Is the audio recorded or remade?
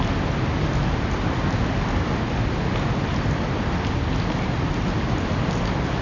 recorded